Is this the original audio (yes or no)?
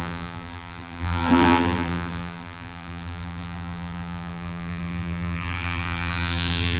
no